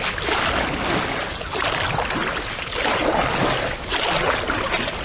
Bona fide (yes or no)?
yes